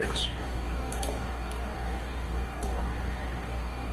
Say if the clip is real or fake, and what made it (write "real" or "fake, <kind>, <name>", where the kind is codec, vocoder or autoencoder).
fake, codec, DAC